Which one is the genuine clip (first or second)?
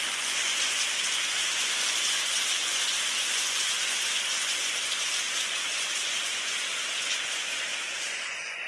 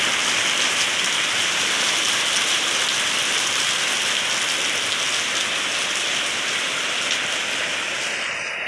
second